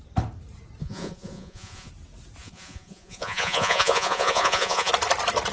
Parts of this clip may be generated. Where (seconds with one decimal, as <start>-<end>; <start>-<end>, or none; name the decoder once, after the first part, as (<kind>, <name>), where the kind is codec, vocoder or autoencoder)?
0.8-1.9 (vocoder, Vocos); 2.4-4.9